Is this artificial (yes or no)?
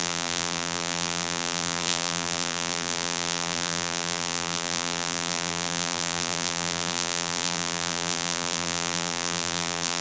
yes